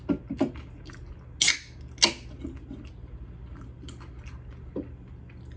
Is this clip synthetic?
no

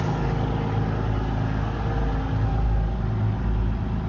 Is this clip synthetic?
no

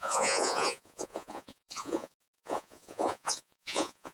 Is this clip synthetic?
yes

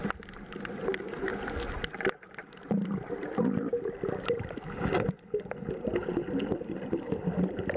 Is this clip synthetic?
no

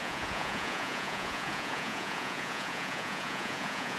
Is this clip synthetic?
yes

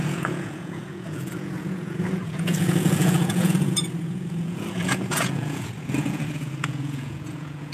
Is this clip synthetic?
yes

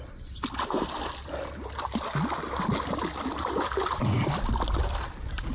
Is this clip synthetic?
no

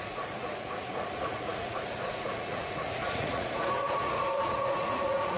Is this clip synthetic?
yes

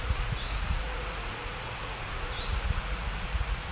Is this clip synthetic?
yes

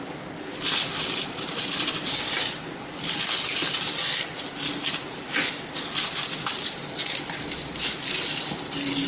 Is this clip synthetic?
no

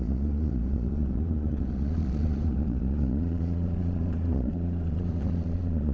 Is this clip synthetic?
yes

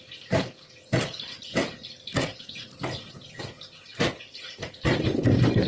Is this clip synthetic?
no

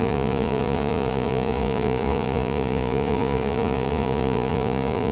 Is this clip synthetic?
yes